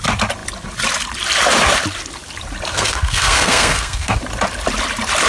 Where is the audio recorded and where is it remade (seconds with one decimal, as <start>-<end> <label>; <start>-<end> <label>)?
0.0-2.7 recorded; 2.7-4.2 remade; 4.2-5.3 recorded